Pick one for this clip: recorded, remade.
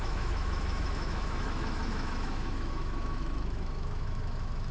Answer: remade